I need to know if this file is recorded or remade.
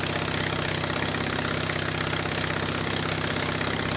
recorded